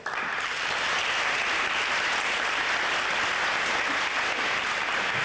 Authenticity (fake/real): real